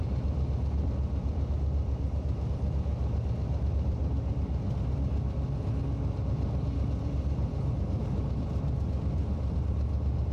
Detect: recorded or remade remade